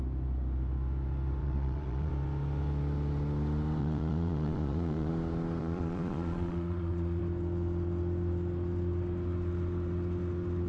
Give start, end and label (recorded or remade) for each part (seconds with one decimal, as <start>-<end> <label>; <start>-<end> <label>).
0.0-1.4 recorded; 1.4-2.1 remade; 2.1-3.8 recorded; 3.8-5.1 remade; 5.1-5.6 recorded; 5.6-7.2 remade; 7.2-10.7 recorded